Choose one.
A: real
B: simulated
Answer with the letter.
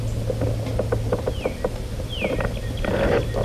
A